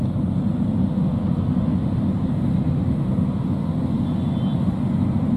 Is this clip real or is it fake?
real